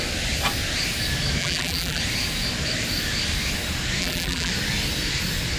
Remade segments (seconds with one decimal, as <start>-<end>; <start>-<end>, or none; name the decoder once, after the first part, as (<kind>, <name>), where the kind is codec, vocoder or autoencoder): 1.4-2.0 (vocoder, BigVGAN v2); 4.0-4.5